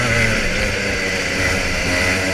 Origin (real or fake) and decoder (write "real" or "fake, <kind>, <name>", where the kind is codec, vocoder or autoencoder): real